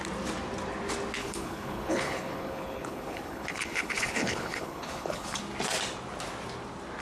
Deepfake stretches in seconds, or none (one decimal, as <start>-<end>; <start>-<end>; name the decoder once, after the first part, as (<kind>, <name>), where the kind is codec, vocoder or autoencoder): 1.2-5.4 (codec, HILCodec)